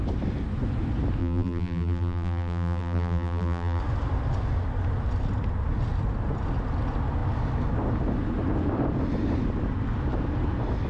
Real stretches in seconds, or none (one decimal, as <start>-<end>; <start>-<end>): 0.0-1.2; 3.8-10.9